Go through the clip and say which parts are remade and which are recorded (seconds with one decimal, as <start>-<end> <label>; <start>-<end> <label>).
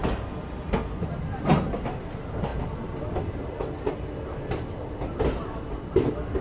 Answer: 0.0-6.4 recorded